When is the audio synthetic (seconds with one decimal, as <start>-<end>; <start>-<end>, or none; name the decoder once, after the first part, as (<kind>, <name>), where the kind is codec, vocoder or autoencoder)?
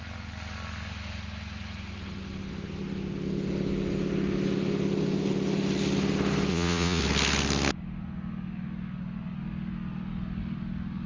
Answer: 6.5-7.0 (vocoder, Vocos)